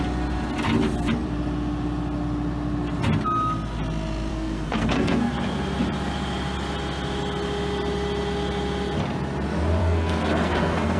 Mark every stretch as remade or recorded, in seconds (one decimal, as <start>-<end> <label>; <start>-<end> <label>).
0.0-4.3 recorded; 4.3-5.3 remade; 5.3-9.8 recorded; 9.8-11.0 remade